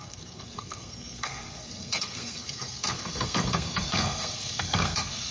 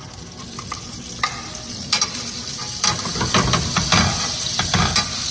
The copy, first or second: first